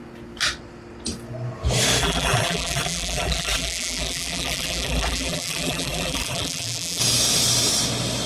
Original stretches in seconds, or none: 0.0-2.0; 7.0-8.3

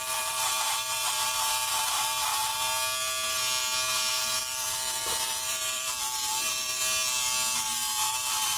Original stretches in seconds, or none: 2.3-4.4; 6.8-7.6